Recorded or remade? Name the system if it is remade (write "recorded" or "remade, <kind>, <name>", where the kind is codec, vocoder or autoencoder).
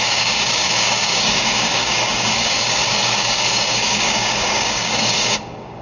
remade, codec, DAC